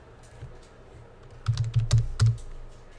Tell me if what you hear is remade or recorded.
recorded